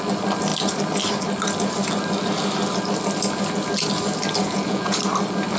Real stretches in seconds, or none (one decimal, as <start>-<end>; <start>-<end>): 0.0-4.4; 5.0-5.6